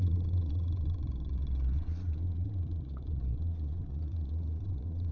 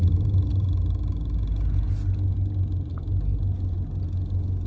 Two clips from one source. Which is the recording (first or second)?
second